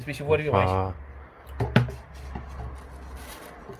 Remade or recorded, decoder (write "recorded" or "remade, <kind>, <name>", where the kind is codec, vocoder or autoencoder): recorded